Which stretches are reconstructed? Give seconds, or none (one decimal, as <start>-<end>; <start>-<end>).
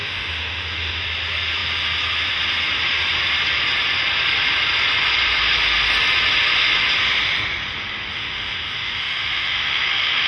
0.0-1.0; 8.1-10.3